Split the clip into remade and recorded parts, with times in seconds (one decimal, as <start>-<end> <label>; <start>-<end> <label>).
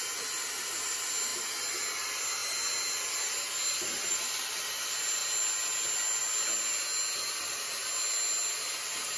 0.0-9.2 recorded